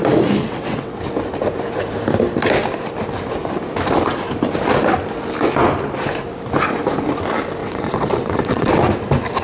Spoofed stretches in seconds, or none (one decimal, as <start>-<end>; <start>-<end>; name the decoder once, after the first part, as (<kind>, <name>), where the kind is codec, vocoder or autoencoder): 0.4-1.0 (vocoder, WaveNeXt); 7.6-8.7